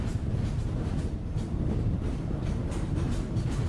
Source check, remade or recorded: remade